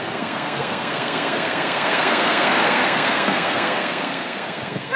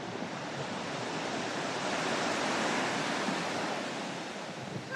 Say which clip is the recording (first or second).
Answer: second